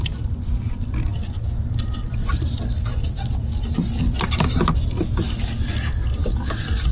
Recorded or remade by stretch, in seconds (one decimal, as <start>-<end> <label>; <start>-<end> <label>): 0.0-6.9 recorded